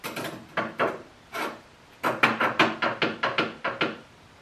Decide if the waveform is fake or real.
real